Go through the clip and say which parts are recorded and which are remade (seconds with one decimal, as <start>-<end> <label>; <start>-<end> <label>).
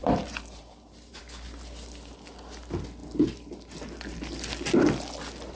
0.0-1.2 remade; 1.2-5.5 recorded